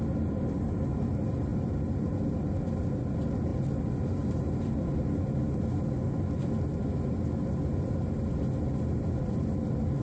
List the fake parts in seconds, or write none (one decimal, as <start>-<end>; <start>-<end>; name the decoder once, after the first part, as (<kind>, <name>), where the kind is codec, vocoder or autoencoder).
none